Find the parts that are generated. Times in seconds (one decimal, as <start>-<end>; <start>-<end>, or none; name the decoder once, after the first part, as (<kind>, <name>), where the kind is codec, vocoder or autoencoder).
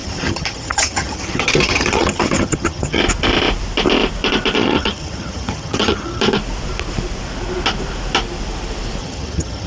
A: 0.0-3.0 (vocoder, HiFi-GAN); 4.6-6.2; 9.0-9.7